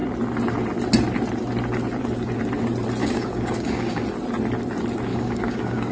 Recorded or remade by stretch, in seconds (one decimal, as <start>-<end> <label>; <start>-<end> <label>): 0.0-3.0 recorded; 3.0-4.0 remade; 4.0-5.1 recorded; 5.1-5.9 remade